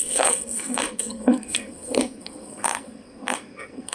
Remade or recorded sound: remade